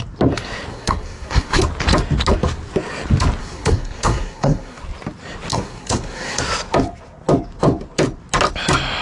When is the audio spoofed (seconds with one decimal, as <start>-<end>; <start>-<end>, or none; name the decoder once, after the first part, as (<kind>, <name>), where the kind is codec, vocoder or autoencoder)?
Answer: 0.7-1.6 (codec, SNAC); 3.4-4.8; 5.5-6.4